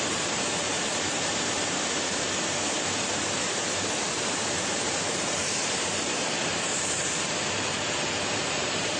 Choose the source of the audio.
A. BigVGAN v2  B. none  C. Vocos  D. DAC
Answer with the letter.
A